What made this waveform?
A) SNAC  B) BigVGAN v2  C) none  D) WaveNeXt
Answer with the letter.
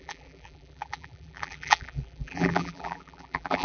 B